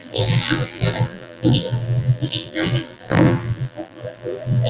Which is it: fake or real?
fake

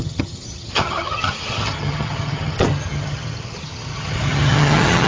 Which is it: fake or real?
fake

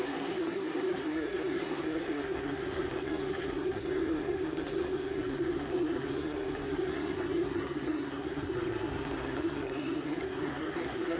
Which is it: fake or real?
fake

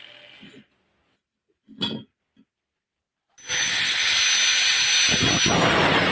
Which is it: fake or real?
real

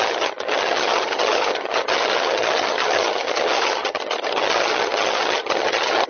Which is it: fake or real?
fake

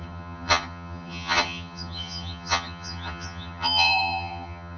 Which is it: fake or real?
fake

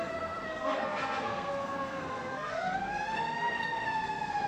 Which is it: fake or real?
fake